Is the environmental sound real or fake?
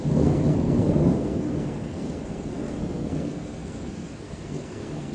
fake